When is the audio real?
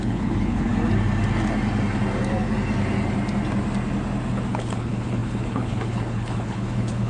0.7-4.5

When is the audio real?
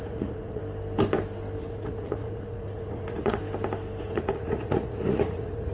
0.6-1.6; 3.4-4.0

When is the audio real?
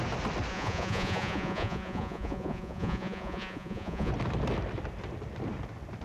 0.0-0.5; 4.1-6.0